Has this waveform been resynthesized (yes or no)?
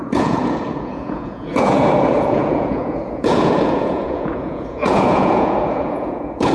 yes